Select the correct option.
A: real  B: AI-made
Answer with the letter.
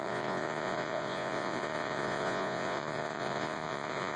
B